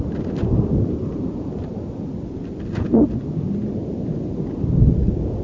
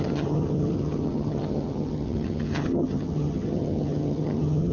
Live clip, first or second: first